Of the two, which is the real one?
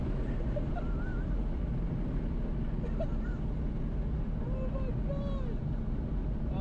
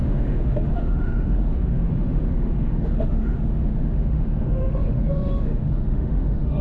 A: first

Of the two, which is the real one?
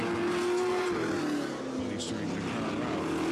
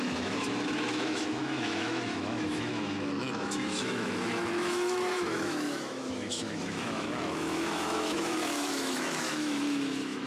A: first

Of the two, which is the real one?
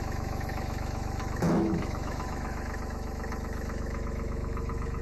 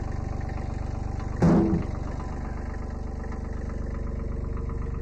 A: second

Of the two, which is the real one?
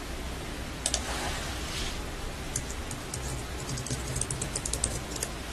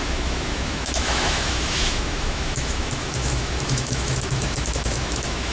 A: first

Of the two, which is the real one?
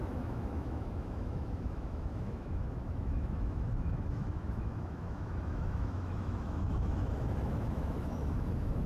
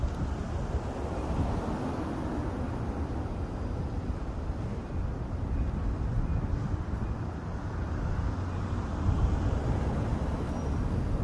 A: second